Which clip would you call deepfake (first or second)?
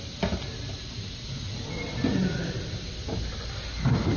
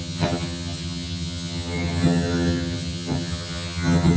second